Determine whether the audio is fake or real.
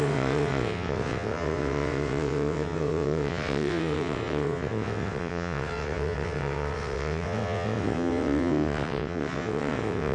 fake